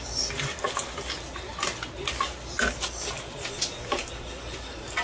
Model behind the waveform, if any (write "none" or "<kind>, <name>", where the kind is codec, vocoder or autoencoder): none